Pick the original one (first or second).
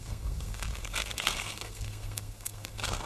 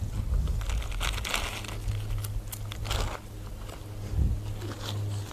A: second